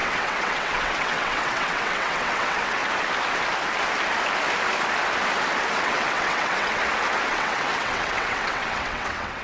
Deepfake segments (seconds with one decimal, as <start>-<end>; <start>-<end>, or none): 0.0-2.8; 5.8-6.8; 7.3-9.4